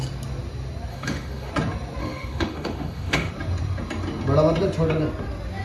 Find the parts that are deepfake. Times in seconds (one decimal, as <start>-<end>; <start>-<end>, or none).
0.9-1.5; 2.0-3.3